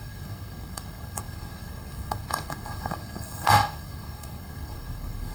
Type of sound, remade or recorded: remade